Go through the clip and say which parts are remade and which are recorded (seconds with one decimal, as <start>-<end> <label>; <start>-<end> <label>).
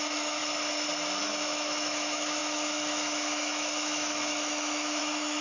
0.0-0.4 remade; 0.4-1.2 recorded; 1.2-5.4 remade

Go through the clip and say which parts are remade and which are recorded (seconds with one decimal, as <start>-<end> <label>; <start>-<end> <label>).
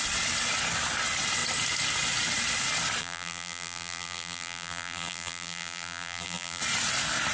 0.0-3.0 recorded; 3.0-6.6 remade; 6.6-7.3 recorded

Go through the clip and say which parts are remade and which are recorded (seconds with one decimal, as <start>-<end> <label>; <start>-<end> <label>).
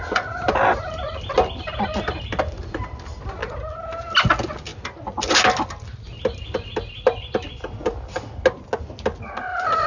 0.0-9.9 recorded